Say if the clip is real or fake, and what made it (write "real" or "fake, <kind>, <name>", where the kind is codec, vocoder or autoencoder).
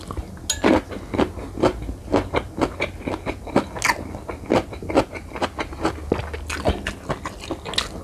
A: real